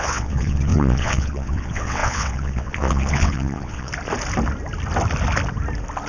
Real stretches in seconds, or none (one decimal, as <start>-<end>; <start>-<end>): 3.9-6.1